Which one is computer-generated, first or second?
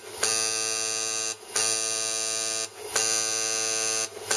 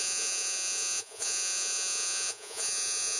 second